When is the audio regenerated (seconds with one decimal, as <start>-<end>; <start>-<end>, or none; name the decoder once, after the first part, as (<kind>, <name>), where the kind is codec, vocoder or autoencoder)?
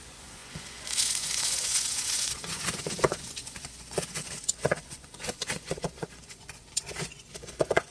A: 0.0-7.9 (vocoder, Vocos)